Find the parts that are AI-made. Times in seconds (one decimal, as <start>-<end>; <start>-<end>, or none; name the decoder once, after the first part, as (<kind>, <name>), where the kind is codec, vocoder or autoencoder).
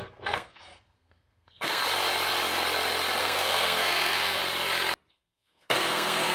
0.0-1.8 (codec, SNAC); 3.2-4.4; 5.1-6.3